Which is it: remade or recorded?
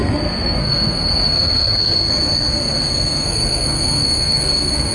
remade